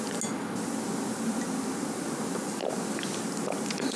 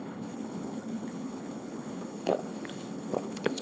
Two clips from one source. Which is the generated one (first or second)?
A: second